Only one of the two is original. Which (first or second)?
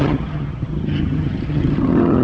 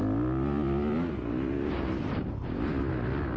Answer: second